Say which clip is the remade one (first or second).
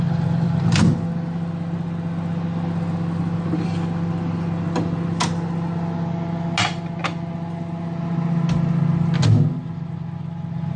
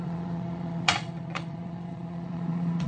second